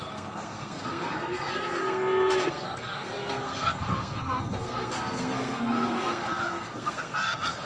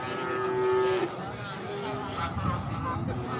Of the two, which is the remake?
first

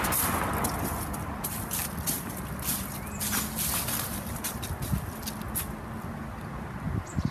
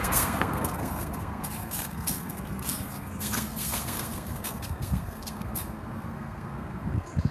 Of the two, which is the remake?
second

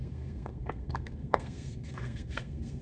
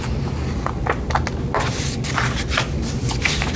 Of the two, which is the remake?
first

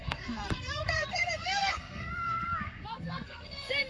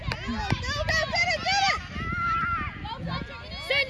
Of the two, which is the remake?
first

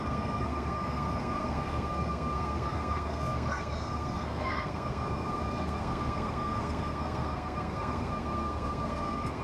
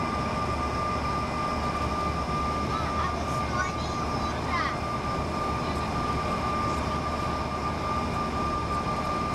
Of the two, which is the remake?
first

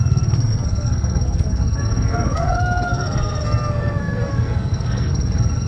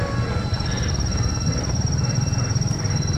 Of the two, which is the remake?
first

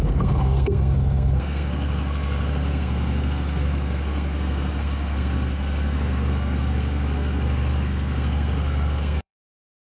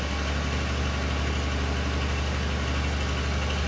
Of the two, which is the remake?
first